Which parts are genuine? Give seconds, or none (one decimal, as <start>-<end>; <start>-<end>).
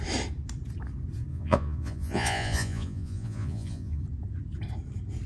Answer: 0.0-1.3; 4.0-5.3